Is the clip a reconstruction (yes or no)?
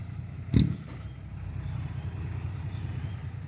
yes